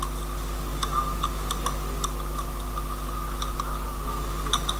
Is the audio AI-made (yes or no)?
no